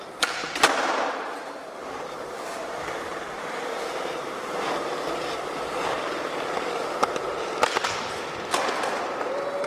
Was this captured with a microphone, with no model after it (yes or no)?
no